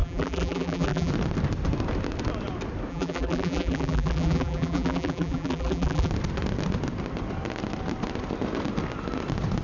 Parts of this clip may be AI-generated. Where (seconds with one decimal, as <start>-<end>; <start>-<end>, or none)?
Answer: 0.0-1.1; 2.9-6.1